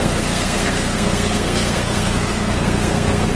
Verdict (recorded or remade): remade